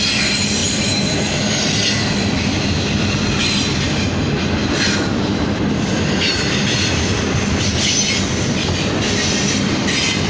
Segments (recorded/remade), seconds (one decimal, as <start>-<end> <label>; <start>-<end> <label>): 0.0-0.6 recorded; 0.6-1.4 remade; 1.4-4.6 recorded; 4.6-5.6 remade; 5.6-10.3 recorded

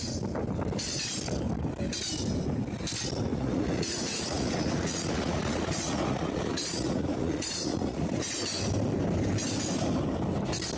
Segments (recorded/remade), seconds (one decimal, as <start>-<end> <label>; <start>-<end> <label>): 0.0-3.3 recorded; 3.3-8.4 remade; 8.4-10.8 recorded

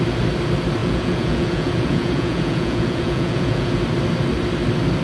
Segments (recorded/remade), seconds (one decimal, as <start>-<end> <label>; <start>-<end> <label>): 0.0-0.8 recorded; 0.8-3.8 remade; 3.8-5.0 recorded

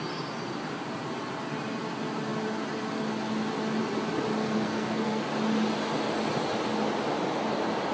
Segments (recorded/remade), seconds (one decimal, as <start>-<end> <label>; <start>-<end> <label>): 0.0-4.4 recorded; 4.4-5.2 remade; 5.2-7.9 recorded

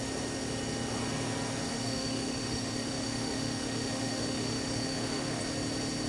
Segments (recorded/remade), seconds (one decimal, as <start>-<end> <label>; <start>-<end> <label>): 0.0-1.7 recorded; 1.7-5.4 remade; 5.4-6.1 recorded

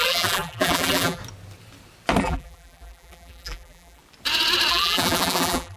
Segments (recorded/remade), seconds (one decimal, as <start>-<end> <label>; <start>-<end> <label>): 0.0-1.2 remade; 1.2-2.2 recorded; 2.2-4.0 remade; 4.0-4.7 recorded; 4.7-5.8 remade

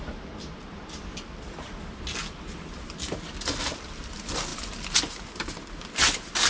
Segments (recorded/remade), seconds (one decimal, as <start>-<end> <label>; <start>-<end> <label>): 0.0-6.5 recorded

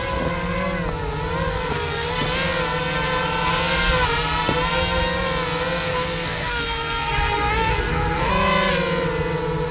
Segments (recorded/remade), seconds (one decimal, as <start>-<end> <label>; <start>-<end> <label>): 0.0-1.4 recorded; 1.4-2.1 remade; 2.1-5.9 recorded; 5.9-8.3 remade; 8.3-9.7 recorded